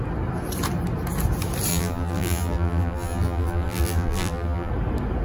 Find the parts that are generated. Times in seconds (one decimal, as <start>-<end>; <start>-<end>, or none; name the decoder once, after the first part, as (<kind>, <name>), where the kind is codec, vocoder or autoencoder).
1.7-4.7 (vocoder, BigVGAN v2)